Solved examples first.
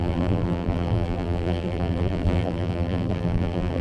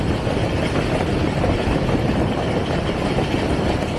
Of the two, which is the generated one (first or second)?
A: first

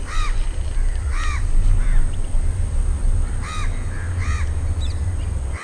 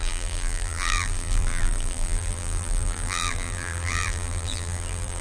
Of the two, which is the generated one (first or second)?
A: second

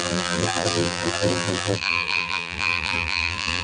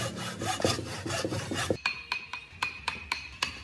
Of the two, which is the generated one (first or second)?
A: first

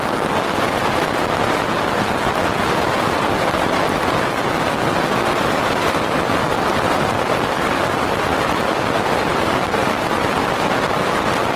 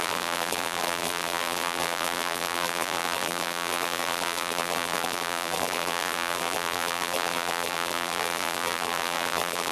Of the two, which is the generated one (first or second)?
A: second